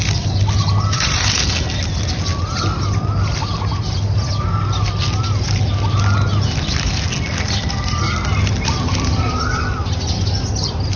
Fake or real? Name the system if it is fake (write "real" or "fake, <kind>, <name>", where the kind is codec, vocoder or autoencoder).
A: real